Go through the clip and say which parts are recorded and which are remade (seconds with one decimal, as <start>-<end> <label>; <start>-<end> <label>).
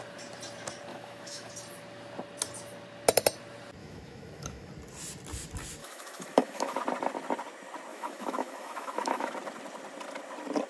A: 0.0-0.9 recorded; 0.9-1.5 remade; 1.5-3.8 recorded; 3.8-4.7 remade; 4.7-5.8 recorded; 5.8-6.8 remade; 6.8-7.9 recorded; 7.9-9.3 remade; 9.3-10.7 recorded